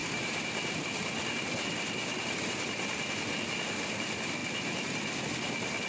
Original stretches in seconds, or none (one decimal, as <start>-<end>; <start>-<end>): 0.0-5.9